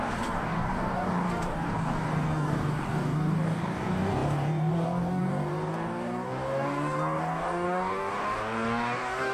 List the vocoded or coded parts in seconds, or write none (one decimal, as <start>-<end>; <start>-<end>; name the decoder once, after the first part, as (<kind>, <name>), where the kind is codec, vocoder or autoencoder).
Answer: 0.0-9.3 (codec, DAC)